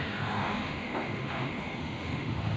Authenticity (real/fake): fake